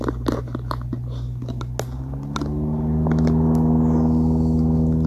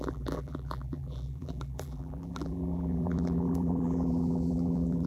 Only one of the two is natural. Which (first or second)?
first